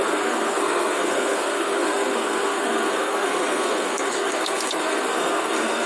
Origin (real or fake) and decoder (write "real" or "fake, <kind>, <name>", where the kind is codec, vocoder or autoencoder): fake, codec, SNAC